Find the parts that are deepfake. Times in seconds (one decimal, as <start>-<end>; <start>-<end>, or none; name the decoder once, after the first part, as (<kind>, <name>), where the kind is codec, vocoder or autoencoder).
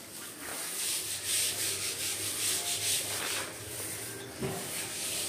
0.0-0.5 (codec, DAC); 1.5-2.1; 4.5-5.3